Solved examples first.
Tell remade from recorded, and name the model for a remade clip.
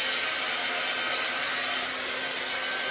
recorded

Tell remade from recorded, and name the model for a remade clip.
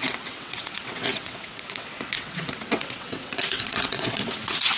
remade, vocoder, WaveNeXt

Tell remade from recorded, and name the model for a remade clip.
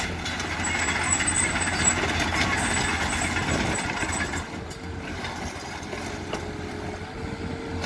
recorded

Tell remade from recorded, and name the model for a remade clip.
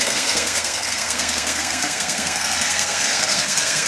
remade, codec, SNAC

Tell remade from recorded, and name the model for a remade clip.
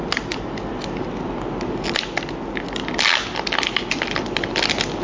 recorded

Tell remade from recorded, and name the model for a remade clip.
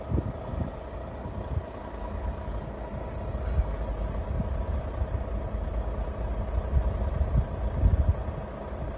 recorded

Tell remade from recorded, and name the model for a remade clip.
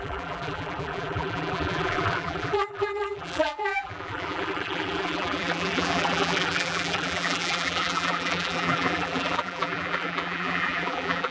remade, vocoder, BigVGAN v2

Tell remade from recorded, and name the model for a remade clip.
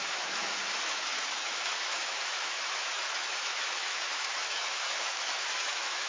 remade, autoencoder, DAC-VAE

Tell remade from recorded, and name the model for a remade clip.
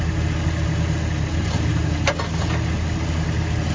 recorded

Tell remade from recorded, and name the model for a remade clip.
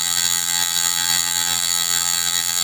remade, vocoder, BigVGAN v2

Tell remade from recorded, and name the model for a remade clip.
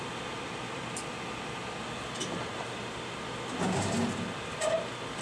recorded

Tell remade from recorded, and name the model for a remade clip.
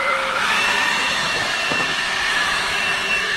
remade, autoencoder, DAC-VAE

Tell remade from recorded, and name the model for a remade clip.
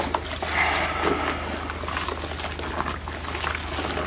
recorded